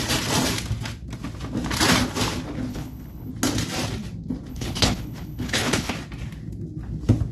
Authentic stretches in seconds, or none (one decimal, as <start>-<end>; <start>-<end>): 0.0-2.7; 3.3-4.5; 5.9-7.3